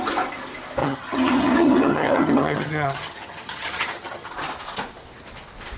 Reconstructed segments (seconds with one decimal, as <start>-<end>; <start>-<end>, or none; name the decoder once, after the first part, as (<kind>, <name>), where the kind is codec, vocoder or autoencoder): 0.8-4.3 (vocoder, HiFi-GAN)